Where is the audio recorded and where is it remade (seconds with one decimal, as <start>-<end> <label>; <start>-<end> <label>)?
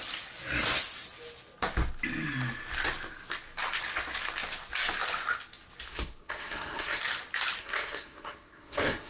0.0-5.9 recorded; 5.9-7.0 remade; 7.0-7.6 recorded; 7.6-9.1 remade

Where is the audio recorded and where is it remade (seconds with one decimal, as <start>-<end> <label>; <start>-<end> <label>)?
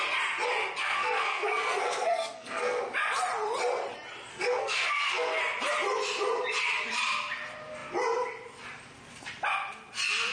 0.0-0.8 recorded; 0.8-2.8 remade; 2.8-4.3 recorded; 4.3-5.4 remade; 5.4-10.3 recorded